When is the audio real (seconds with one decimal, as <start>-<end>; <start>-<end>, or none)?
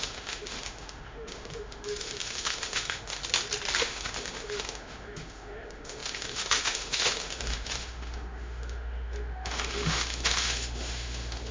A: 3.2-3.8